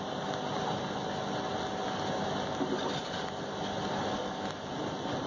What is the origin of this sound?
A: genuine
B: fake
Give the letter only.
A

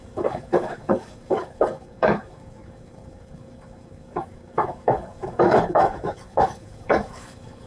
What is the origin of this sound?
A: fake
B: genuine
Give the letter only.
A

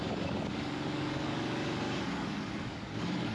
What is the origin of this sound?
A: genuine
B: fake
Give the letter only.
B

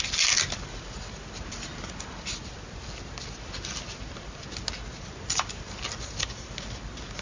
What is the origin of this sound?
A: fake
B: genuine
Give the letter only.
B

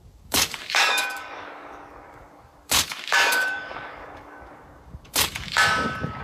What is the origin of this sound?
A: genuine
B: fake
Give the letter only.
B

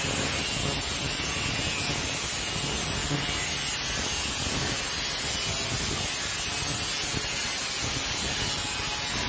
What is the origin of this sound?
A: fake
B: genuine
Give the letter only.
B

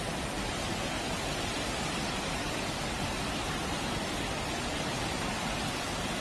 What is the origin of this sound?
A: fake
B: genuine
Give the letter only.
B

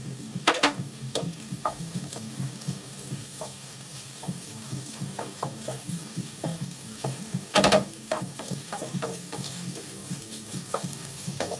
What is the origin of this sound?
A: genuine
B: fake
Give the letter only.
B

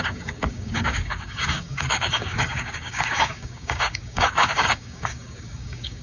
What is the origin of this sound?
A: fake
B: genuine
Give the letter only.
A